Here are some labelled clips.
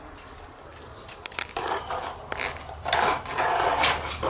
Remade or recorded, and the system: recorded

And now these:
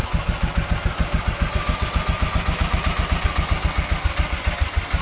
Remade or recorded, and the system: recorded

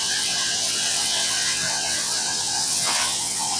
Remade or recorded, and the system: remade, vocoder, WaveNeXt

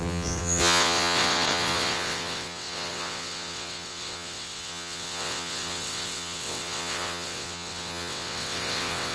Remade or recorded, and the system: remade, vocoder, WaveNeXt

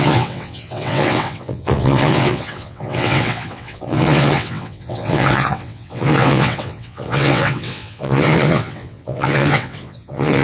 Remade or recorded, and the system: remade, vocoder, WaveNeXt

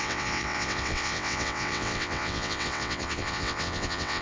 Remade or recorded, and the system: remade, vocoder, WaveNeXt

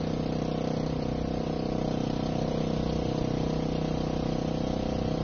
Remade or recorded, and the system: recorded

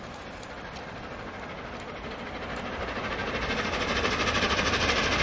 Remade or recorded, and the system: recorded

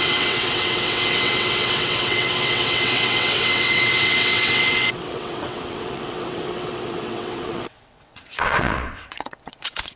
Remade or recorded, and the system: remade, vocoder, WaveNeXt